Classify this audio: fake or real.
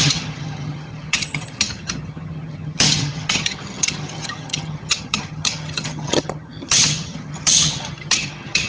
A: fake